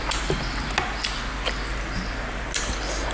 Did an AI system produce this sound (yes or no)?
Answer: no